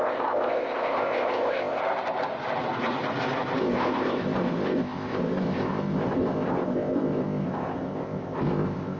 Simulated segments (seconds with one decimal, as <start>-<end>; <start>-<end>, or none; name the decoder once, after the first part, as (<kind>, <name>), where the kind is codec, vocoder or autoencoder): 0.0-1.8 (codec, ZipCodec); 3.6-9.0